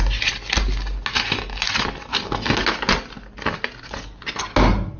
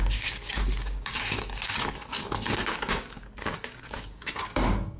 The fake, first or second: second